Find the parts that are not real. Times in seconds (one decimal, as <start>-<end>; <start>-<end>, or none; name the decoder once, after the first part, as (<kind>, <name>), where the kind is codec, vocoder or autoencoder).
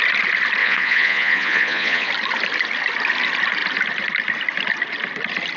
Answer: 0.6-2.1 (vocoder, Vocos)